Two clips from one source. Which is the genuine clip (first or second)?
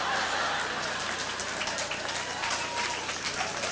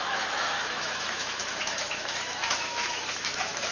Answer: first